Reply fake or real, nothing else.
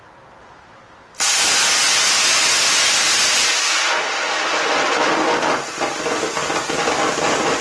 real